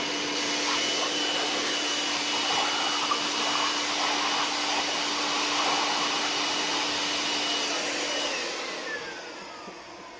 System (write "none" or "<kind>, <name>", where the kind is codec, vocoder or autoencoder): none